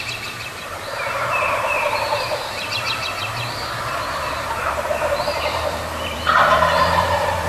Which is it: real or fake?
fake